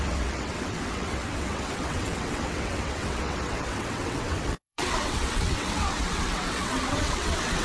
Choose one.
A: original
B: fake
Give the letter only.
B